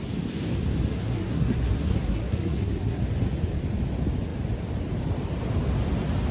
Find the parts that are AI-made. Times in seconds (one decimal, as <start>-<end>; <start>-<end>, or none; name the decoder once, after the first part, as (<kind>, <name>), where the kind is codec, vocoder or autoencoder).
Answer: 0.9-3.0 (codec, SNAC)

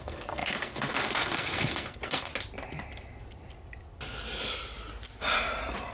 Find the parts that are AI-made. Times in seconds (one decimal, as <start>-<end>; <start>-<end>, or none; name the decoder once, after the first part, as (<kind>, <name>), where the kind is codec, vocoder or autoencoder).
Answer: 0.0-2.3 (codec, SNAC)

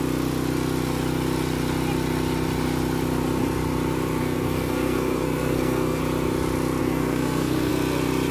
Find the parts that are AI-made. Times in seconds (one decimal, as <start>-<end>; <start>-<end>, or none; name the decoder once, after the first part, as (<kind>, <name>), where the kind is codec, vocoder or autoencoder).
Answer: 4.2-6.0 (codec, SNAC); 6.8-7.7

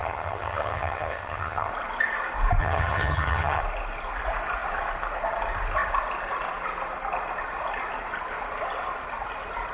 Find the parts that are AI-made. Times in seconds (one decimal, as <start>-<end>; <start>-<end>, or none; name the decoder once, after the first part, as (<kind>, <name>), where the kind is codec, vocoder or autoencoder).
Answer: 0.0-1.7 (vocoder, HiFi-GAN); 2.6-3.6